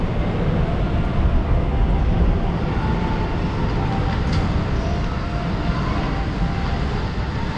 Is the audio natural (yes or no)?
yes